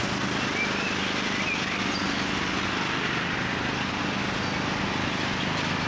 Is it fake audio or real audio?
real